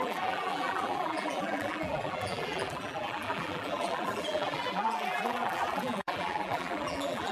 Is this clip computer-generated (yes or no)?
yes